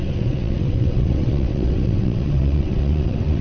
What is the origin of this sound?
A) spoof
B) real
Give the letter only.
A